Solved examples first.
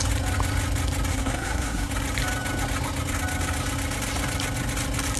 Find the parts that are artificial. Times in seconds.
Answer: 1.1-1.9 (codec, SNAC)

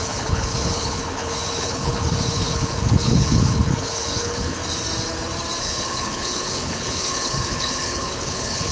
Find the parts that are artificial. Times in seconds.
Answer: 0.0-4.6 (codec, HILCodec); 5.6-8.7

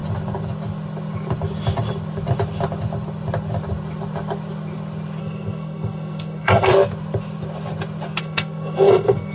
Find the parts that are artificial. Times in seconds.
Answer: 5.2-6.7 (codec, SNAC); 8.2-9.3

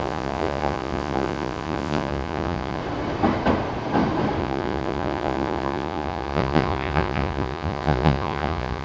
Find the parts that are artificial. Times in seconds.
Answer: 0.0-2.8 (vocoder, Vocos); 4.4-8.8

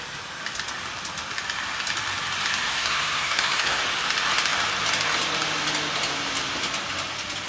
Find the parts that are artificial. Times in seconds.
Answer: 2.7-3.8 (codec, SNAC)

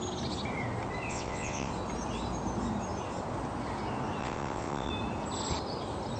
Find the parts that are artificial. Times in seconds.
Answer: 1.1-1.7 (vocoder, WaveNeXt); 4.2-4.9

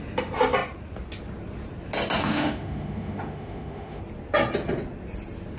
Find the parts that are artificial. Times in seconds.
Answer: 2.2-4.0 (autoencoder, DAC-VAE)

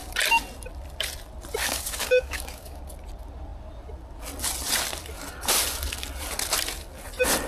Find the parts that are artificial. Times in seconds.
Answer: 1.6-2.8 (codec, DAC)